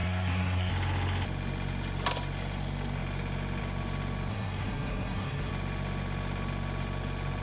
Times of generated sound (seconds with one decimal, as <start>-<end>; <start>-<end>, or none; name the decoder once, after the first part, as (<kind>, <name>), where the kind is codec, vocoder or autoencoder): 0.0-0.7 (codec, SNAC); 4.3-5.5